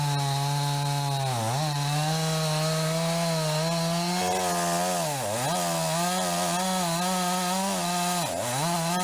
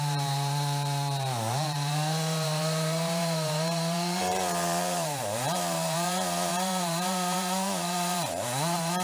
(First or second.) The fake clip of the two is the second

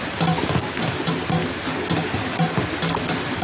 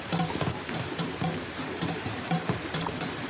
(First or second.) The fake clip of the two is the second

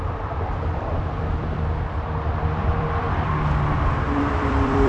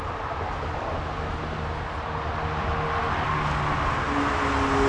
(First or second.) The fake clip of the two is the first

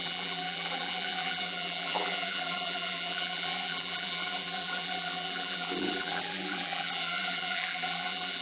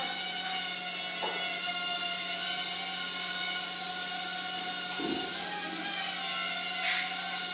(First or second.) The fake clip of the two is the first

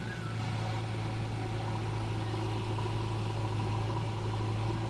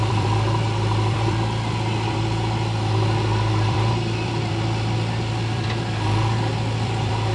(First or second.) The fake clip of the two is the second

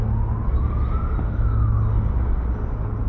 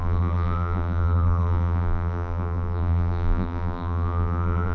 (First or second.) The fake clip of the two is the second